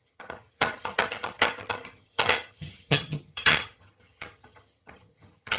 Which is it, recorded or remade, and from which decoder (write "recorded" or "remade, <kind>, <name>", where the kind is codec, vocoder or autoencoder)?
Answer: remade, vocoder, HiFi-GAN